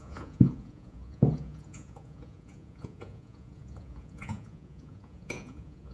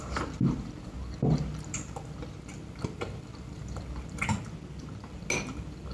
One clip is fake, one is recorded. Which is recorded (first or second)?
second